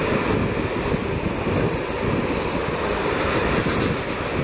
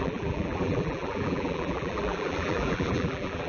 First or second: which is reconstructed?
second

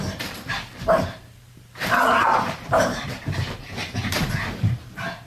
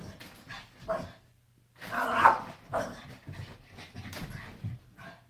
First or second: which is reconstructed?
first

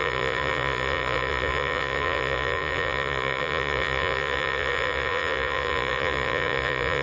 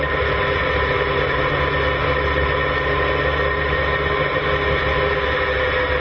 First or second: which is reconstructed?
first